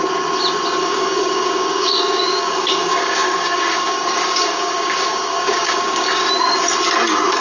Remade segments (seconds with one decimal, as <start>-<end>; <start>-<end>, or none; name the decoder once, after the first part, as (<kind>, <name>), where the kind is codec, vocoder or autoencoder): 0.8-6.2 (codec, DAC)